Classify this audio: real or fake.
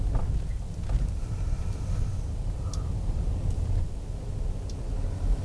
real